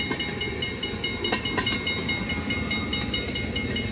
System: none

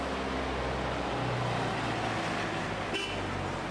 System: none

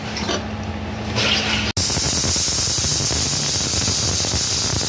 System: none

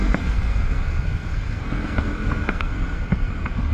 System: codec, SNAC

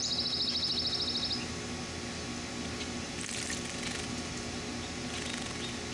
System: none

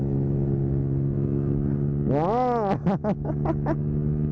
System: none